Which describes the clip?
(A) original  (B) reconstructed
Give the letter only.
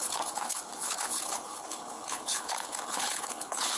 B